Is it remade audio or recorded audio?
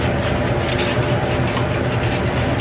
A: recorded